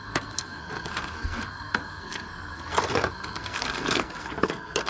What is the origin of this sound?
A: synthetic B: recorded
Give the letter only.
A